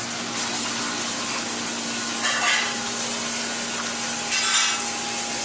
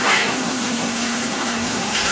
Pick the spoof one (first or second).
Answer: second